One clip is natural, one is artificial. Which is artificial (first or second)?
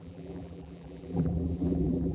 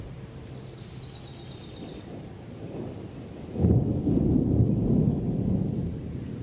first